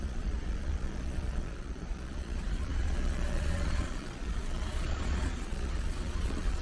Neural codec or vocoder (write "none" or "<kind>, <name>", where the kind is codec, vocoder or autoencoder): vocoder, Vocos